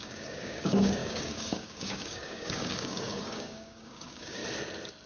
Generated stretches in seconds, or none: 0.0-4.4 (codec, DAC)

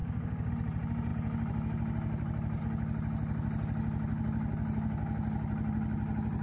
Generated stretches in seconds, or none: 0.0-0.5 (codec, DAC)

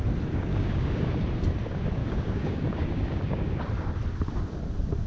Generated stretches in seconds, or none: 0.5-1.1 (codec, DAC); 2.0-3.6

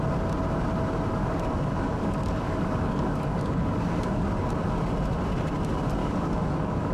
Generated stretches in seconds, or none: 1.1-4.3 (codec, DAC); 6.0-6.9

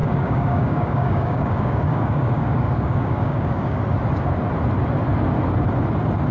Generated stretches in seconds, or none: 0.0-3.8 (codec, DAC)

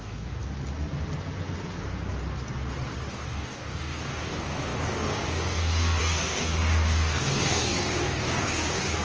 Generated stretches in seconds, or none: 0.0-0.4 (codec, DAC); 3.1-9.0